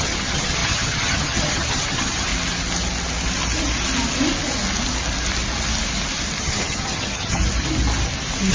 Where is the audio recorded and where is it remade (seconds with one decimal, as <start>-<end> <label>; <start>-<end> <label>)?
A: 0.0-2.3 remade; 2.3-6.4 recorded; 6.4-7.4 remade; 7.4-8.5 recorded